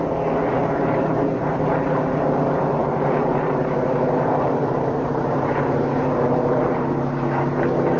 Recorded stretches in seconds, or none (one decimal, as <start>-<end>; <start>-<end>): 0.0-0.6; 1.7-2.8; 7.6-8.0